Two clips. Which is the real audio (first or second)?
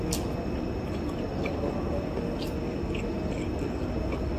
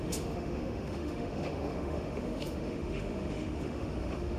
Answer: first